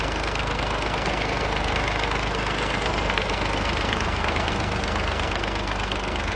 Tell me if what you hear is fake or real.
fake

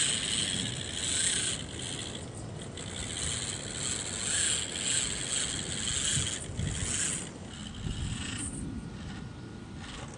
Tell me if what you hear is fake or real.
real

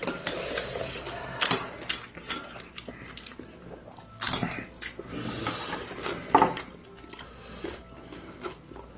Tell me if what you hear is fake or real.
real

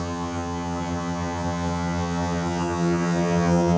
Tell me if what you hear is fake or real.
fake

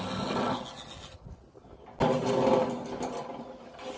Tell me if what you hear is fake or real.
real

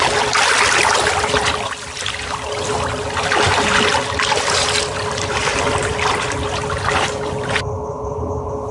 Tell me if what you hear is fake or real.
real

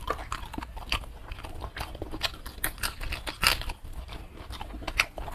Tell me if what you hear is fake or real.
real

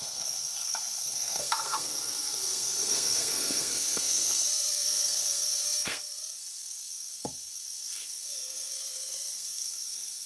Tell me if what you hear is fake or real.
fake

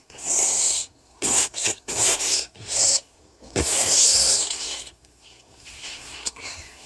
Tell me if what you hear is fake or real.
fake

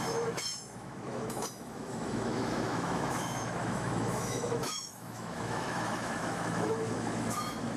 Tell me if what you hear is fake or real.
fake